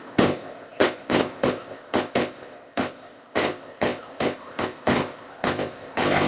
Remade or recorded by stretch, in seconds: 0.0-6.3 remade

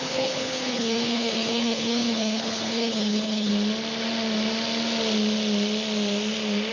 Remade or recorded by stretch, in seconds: 0.0-3.5 remade; 3.5-6.7 recorded

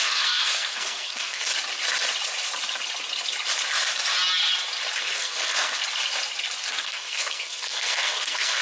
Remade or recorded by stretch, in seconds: 0.0-1.5 remade; 1.5-5.0 recorded; 5.0-5.8 remade; 5.8-6.7 recorded; 6.7-8.6 remade

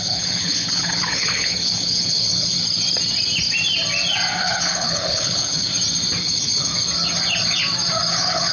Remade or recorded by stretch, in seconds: 0.0-2.6 remade; 2.6-4.4 recorded; 4.4-5.7 remade; 5.7-6.2 recorded; 6.2-6.7 remade; 6.7-8.1 recorded; 8.1-8.5 remade

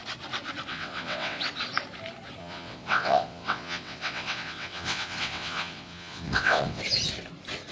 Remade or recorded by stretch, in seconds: 0.0-0.7 recorded; 0.7-1.4 remade; 1.4-2.4 recorded; 2.4-6.8 remade; 6.8-7.7 recorded

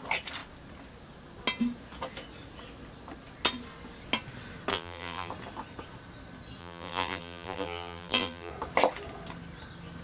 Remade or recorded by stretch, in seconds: 0.0-4.7 recorded; 4.7-5.3 remade; 5.3-6.6 recorded; 6.6-8.5 remade; 8.5-10.0 recorded

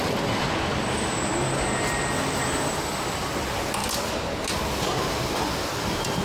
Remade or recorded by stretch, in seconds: 0.0-6.2 recorded